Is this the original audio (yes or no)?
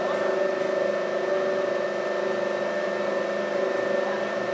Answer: yes